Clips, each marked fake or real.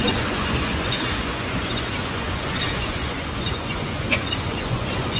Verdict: fake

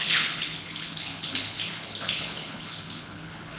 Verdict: fake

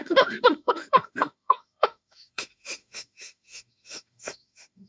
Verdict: fake